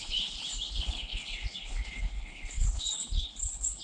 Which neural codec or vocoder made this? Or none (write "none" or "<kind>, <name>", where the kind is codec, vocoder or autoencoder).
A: codec, HILCodec